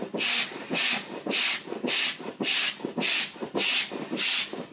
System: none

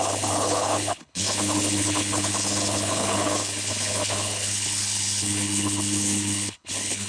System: codec, HILCodec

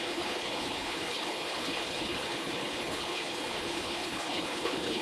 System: codec, HILCodec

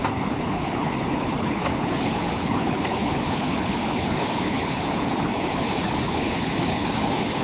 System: codec, HILCodec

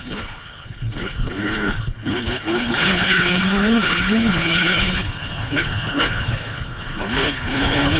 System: codec, HILCodec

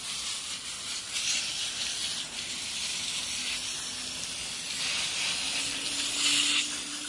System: none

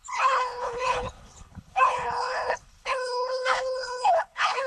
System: codec, HILCodec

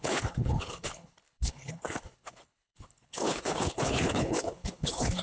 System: codec, HILCodec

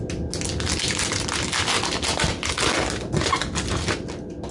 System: none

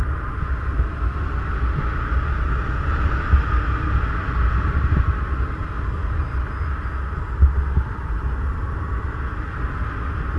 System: none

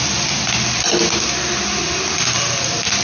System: none